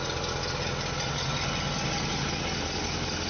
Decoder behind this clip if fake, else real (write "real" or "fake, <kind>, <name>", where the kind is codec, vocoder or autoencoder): real